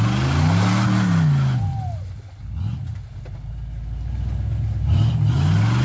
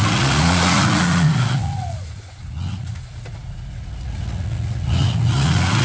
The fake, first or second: second